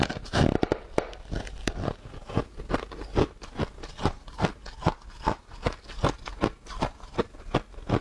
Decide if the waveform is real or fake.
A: real